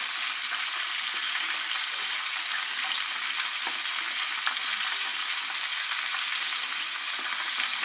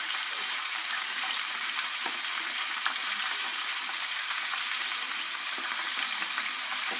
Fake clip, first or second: second